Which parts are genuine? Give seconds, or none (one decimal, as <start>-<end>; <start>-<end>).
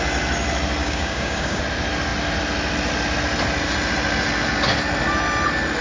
0.0-0.8; 1.6-5.8